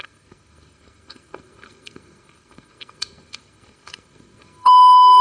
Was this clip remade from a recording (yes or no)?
yes